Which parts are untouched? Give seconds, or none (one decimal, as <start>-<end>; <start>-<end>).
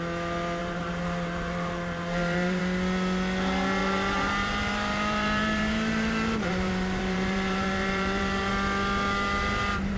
0.0-0.6; 2.6-3.8; 8.5-10.0